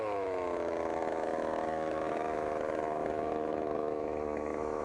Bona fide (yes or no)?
no